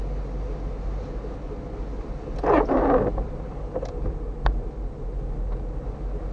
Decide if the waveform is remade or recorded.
recorded